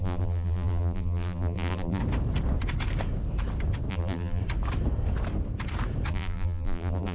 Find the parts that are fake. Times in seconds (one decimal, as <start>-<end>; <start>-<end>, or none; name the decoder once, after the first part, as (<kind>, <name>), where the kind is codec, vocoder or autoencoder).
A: 0.0-2.0 (vocoder, BigVGAN v2); 3.9-4.4; 6.1-7.1